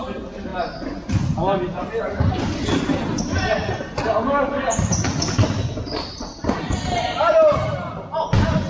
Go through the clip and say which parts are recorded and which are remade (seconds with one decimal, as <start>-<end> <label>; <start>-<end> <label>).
0.0-8.7 recorded